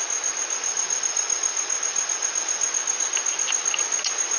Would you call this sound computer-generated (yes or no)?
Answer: no